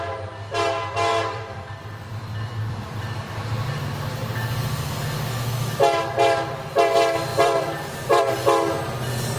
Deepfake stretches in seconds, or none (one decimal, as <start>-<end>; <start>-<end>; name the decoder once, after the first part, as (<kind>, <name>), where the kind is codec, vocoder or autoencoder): 1.1-3.8 (vocoder, BigVGAN v2); 7.3-8.2

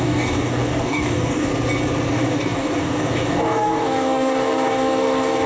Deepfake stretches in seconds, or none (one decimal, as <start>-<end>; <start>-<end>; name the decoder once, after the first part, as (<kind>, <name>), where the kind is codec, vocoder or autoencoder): 0.0-1.5 (codec, DAC); 2.1-5.5